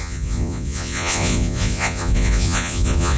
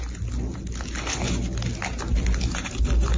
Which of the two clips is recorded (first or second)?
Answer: second